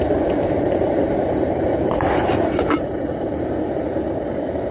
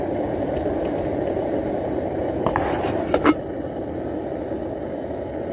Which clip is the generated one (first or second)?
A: first